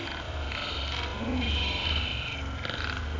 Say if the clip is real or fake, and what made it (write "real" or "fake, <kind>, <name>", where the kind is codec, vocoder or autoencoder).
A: real